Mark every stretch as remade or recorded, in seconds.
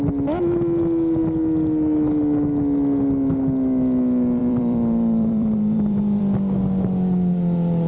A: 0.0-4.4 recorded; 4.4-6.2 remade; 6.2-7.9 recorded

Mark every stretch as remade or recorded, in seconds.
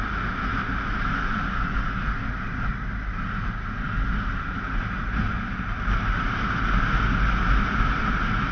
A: 0.0-4.3 recorded; 4.3-6.3 remade; 6.3-8.5 recorded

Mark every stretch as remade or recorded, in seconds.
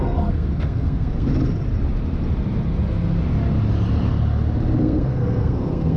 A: 0.0-1.3 remade; 1.3-4.8 recorded; 4.8-6.0 remade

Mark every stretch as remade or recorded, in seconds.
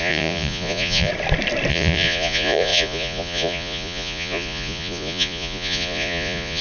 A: 0.0-1.1 remade; 1.1-1.7 recorded; 1.7-6.6 remade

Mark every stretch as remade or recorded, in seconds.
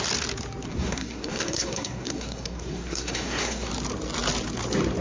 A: 0.0-0.7 recorded; 0.7-3.7 remade; 3.7-5.0 recorded